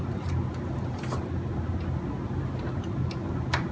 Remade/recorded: recorded